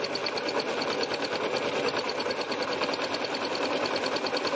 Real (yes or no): yes